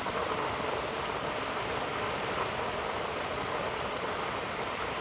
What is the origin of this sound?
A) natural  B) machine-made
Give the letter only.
A